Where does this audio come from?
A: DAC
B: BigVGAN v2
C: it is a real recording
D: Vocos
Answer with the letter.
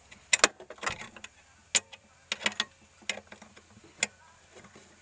C